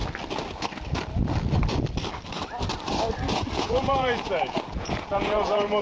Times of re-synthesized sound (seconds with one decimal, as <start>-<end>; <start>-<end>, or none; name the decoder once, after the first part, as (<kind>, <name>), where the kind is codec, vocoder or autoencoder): 3.5-5.8 (vocoder, Vocos)